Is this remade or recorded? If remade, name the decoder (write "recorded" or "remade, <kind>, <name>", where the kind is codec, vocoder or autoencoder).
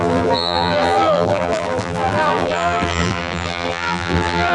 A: remade, vocoder, BigVGAN v2